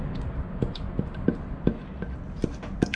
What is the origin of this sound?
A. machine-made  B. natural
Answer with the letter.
B